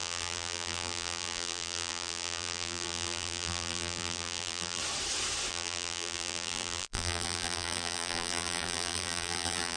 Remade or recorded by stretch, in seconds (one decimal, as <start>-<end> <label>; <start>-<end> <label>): 0.0-4.8 remade; 4.8-5.5 recorded; 5.5-9.8 remade